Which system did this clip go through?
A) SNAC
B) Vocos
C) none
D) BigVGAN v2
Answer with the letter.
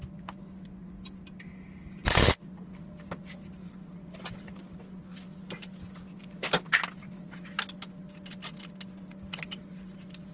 C